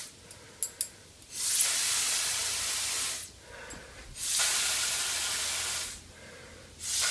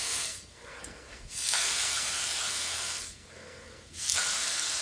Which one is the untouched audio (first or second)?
first